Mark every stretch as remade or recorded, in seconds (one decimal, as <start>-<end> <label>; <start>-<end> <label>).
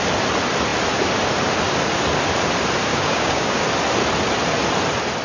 0.0-2.9 recorded; 2.9-3.6 remade; 3.6-5.2 recorded